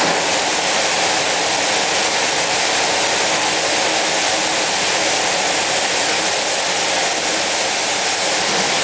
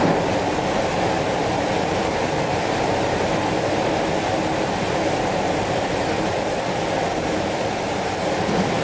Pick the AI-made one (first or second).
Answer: second